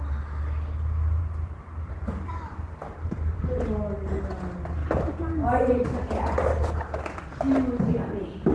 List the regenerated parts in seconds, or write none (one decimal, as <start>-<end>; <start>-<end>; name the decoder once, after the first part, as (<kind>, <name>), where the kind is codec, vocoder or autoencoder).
1.2-1.9 (vocoder, BigVGAN v2); 2.8-3.4; 4.8-6.0

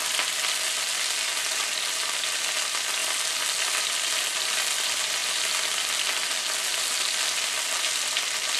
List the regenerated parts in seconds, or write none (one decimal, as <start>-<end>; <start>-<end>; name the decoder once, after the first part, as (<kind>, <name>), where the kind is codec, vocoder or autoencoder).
none

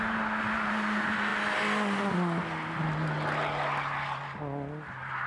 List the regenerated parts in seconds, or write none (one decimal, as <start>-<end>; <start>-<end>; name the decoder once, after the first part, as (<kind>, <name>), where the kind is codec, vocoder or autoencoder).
none

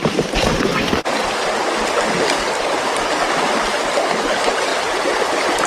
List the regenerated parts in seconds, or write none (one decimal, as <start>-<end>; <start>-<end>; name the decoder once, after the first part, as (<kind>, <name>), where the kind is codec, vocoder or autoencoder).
0.0-0.7 (vocoder, BigVGAN v2); 4.1-5.7

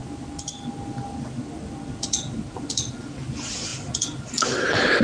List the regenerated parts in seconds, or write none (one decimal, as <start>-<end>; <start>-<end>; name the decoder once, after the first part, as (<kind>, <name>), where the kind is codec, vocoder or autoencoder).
0.0-3.0 (vocoder, BigVGAN v2); 3.7-4.3

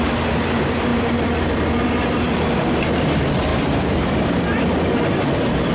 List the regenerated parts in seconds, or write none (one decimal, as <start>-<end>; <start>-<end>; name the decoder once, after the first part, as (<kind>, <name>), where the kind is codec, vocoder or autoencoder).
3.5-4.3 (vocoder, BigVGAN v2)